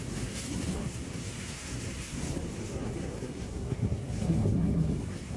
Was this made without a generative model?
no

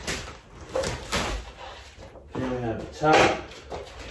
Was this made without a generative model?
yes